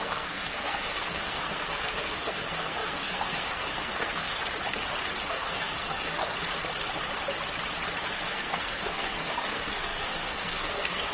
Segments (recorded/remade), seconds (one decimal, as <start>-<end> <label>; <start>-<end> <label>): 0.0-4.4 remade; 4.4-5.3 recorded; 5.3-6.2 remade; 6.2-8.0 recorded; 8.0-11.1 remade